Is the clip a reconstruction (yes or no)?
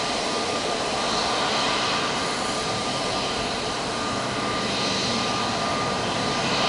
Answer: yes